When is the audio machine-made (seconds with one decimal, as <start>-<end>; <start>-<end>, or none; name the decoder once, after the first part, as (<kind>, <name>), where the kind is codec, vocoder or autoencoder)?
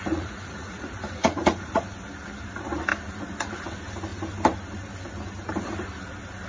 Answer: 0.0-1.8 (vocoder, Vocos)